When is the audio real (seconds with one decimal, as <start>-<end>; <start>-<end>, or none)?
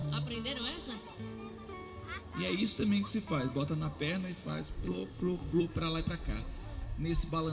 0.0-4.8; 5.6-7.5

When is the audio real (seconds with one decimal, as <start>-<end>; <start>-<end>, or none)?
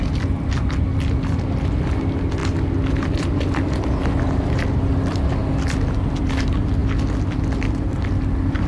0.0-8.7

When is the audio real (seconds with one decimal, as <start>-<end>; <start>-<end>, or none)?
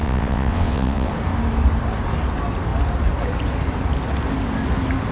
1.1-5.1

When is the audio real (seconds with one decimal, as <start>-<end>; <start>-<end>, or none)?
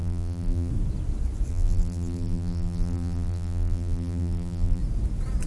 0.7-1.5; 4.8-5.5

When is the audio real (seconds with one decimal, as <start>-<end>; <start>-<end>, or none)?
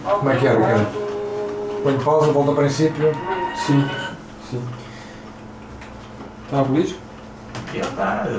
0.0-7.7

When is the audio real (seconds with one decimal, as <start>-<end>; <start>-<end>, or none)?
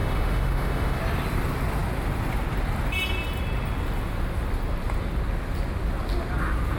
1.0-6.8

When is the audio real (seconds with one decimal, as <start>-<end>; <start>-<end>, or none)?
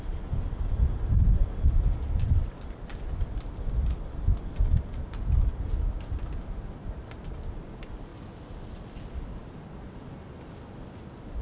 0.0-11.4